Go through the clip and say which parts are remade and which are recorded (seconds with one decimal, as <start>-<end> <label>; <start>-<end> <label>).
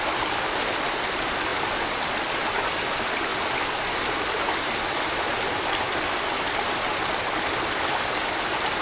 0.0-1.5 recorded; 1.5-2.7 remade; 2.7-8.8 recorded